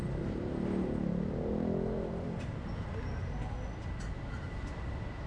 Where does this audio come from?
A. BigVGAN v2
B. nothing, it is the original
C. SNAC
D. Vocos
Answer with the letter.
B